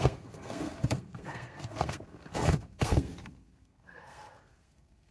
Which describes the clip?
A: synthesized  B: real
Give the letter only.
A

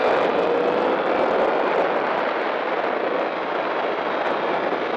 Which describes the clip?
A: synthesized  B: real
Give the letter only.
B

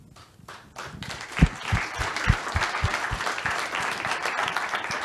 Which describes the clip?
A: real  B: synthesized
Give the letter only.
A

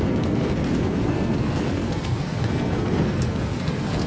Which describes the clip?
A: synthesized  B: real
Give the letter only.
A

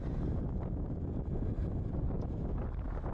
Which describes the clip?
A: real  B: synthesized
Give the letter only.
A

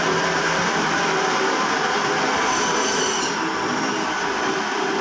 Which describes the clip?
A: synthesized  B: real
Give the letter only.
A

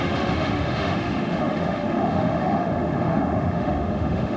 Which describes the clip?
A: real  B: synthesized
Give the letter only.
B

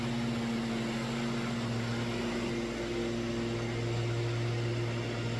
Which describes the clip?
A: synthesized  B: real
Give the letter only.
B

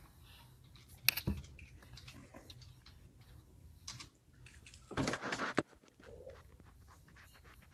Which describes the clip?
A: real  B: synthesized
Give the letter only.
A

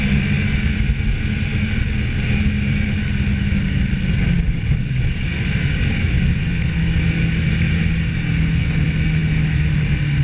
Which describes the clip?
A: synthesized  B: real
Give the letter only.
B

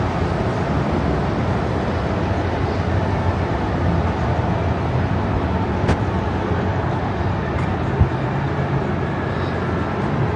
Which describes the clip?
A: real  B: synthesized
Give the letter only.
A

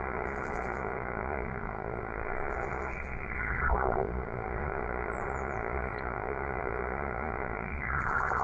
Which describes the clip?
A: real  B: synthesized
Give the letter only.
B